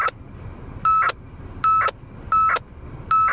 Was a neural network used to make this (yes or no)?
no